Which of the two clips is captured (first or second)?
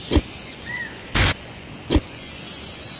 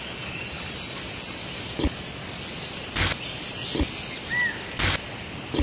second